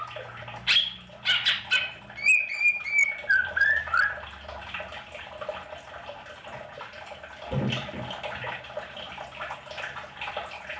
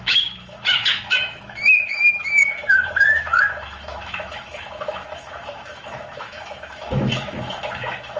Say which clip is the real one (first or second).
first